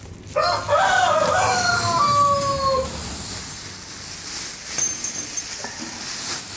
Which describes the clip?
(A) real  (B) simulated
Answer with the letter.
A